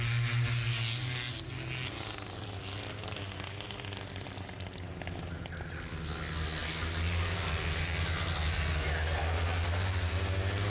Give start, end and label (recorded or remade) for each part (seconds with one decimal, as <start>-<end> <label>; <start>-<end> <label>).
0.0-10.7 recorded